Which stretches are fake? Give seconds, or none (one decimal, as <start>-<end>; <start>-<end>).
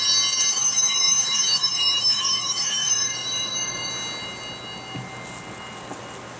0.5-3.9